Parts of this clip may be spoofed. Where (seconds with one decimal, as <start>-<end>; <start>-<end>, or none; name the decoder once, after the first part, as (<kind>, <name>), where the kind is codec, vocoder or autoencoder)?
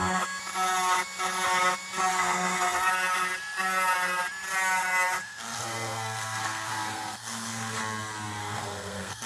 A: 2.1-2.9 (codec, SNAC); 5.2-7.8; 8.4-9.3